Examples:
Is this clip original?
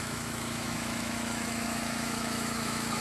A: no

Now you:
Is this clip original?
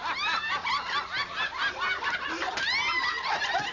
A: yes